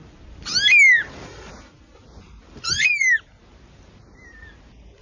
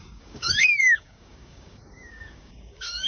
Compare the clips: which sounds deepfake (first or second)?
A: second